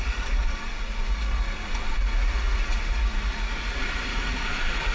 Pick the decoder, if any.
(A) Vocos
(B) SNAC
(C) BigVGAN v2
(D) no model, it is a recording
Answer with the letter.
A